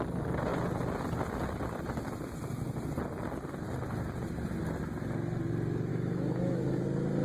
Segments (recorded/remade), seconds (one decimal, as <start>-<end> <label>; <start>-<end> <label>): 0.0-5.9 recorded; 5.9-6.8 remade; 6.8-7.2 recorded